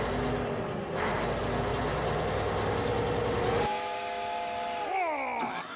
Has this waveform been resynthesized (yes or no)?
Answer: no